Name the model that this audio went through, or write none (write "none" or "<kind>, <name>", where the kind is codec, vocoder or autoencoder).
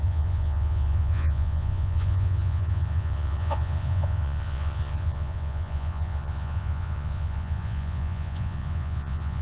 vocoder, Vocos